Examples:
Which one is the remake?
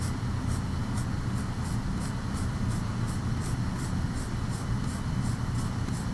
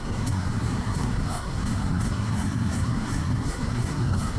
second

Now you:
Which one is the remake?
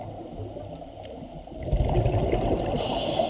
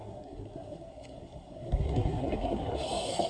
second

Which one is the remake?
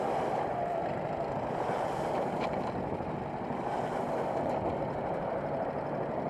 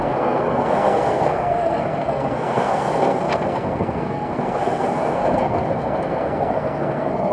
second